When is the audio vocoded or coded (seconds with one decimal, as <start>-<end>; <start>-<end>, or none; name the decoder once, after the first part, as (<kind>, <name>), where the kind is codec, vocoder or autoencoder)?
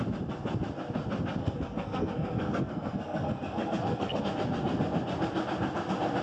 1.4-4.2 (codec, SNAC)